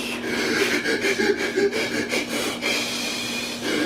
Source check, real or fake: real